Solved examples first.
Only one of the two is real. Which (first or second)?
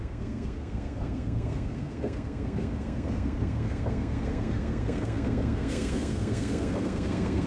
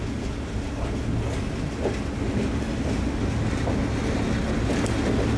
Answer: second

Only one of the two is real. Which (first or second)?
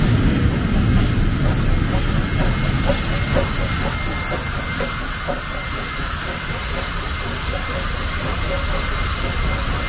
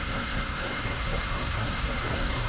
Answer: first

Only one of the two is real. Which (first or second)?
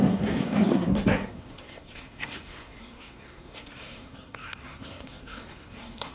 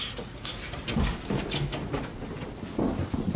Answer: second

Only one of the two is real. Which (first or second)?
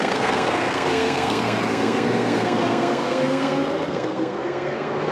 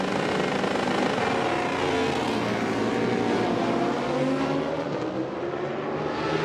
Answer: second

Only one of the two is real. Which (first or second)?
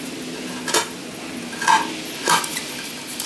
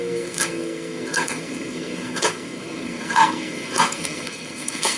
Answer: first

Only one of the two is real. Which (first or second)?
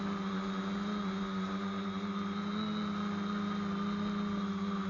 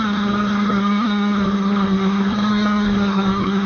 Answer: first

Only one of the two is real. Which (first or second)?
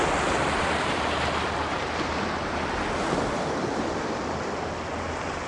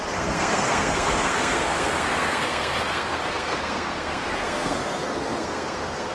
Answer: first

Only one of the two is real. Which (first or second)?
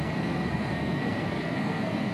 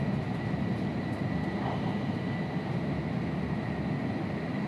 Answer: second